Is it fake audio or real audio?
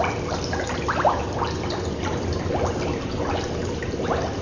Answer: real